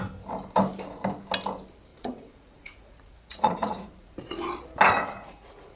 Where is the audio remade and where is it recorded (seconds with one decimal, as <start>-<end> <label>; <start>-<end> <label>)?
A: 0.0-1.9 recorded; 1.9-4.4 remade; 4.4-5.0 recorded; 5.0-5.8 remade

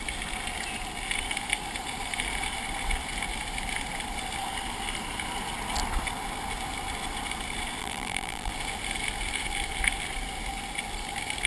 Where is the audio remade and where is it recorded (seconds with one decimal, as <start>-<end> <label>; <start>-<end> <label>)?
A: 0.0-7.8 recorded; 7.8-8.5 remade; 8.5-11.5 recorded

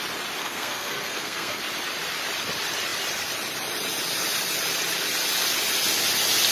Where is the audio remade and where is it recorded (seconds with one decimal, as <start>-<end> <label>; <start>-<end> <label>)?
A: 0.0-0.4 recorded; 0.4-1.6 remade; 1.6-6.5 recorded

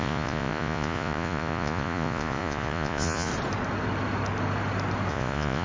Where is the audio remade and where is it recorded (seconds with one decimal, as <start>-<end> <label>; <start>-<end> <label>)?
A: 0.0-3.3 remade; 3.3-5.1 recorded; 5.1-5.6 remade

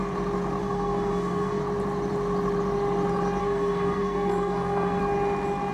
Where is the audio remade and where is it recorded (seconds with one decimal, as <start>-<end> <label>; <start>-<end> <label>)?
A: 0.0-0.6 recorded; 0.6-1.6 remade; 1.6-3.4 recorded; 3.4-5.0 remade; 5.0-5.7 recorded

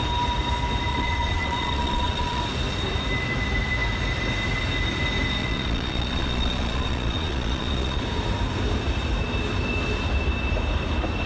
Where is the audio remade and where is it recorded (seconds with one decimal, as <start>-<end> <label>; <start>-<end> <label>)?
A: 0.0-0.9 recorded; 0.9-2.4 remade; 2.4-5.4 recorded; 5.4-8.0 remade; 8.0-11.3 recorded

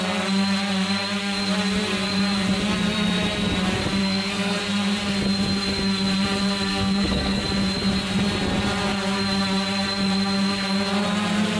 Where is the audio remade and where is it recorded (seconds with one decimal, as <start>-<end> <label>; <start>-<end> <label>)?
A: 0.0-4.0 recorded; 4.0-4.6 remade; 4.6-6.7 recorded; 6.7-7.4 remade; 7.4-11.6 recorded